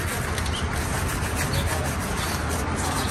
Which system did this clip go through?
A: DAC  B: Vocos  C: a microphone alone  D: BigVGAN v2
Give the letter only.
C